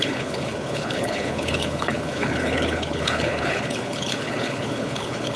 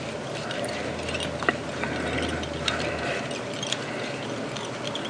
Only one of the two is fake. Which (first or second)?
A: first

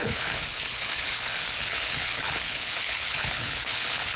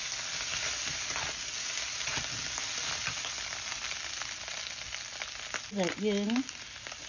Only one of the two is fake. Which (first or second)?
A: first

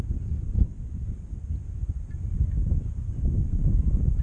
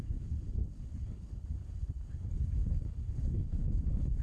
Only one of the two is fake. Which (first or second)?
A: second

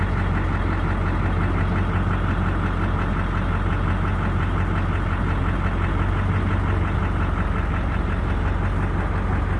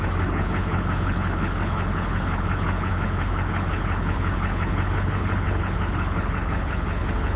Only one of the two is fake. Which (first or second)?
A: second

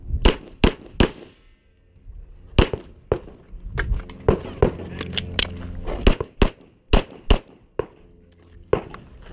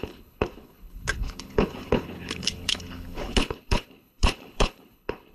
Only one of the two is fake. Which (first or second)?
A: second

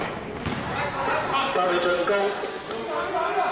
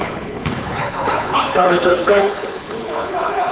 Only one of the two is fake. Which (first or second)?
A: second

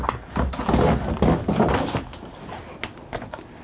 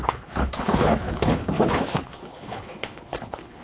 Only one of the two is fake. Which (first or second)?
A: second